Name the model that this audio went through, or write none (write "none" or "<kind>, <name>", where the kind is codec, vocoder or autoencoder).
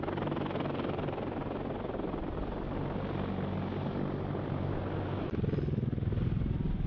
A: none